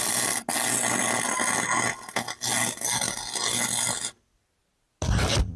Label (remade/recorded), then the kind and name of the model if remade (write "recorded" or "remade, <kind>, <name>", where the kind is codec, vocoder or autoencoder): recorded